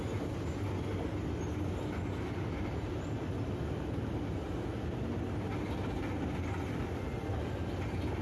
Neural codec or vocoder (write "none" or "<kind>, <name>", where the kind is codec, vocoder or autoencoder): none